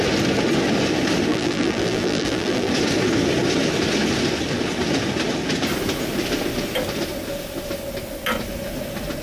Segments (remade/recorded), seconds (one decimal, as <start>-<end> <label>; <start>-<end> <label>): 0.0-1.3 recorded; 1.3-2.7 remade; 2.7-9.2 recorded